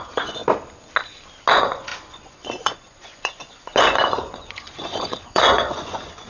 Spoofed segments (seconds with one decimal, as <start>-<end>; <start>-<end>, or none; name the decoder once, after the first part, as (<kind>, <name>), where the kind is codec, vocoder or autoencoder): 0.0-0.4 (vocoder, Vocos); 1.5-6.3